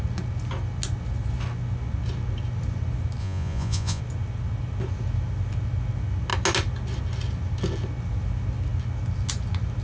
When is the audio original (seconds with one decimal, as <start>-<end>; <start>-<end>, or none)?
0.0-3.2; 4.0-9.8